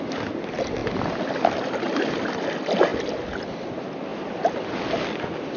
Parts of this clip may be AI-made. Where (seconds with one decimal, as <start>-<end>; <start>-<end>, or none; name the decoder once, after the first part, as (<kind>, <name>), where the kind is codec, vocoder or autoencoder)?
none